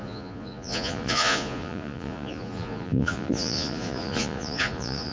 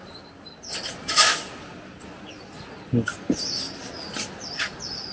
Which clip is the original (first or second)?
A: second